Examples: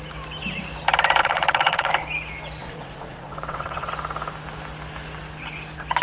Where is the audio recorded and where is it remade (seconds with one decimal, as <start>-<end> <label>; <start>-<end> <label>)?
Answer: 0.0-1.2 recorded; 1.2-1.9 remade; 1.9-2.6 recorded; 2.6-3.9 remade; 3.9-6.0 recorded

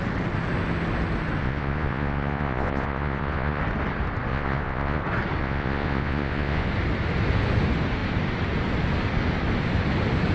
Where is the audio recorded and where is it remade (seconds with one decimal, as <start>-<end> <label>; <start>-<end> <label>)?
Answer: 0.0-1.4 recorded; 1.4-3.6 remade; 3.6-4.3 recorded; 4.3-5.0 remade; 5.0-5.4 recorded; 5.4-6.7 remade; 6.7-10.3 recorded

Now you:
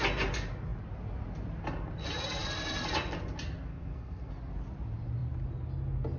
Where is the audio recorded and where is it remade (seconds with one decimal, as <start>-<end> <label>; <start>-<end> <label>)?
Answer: 0.0-3.7 recorded; 3.7-4.3 remade; 4.3-6.2 recorded

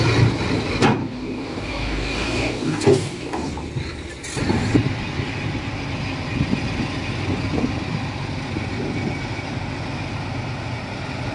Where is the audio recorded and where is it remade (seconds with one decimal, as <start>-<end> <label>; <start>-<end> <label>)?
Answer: 0.0-1.0 recorded; 1.0-3.5 remade; 3.5-11.3 recorded

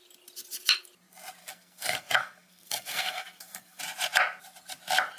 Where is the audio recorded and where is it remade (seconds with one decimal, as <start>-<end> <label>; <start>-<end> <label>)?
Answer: 0.0-1.4 recorded; 1.4-3.8 remade; 3.8-5.2 recorded